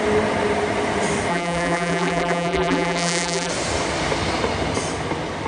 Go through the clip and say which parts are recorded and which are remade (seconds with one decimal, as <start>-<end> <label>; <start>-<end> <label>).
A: 0.0-1.3 recorded; 1.3-3.5 remade; 3.5-5.5 recorded